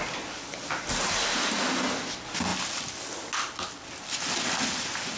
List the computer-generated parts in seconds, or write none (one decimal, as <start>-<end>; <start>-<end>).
none